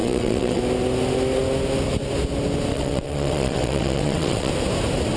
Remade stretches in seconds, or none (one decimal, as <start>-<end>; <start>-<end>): 0.0-0.6; 2.7-4.5